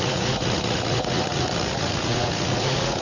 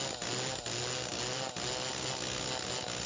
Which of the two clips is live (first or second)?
second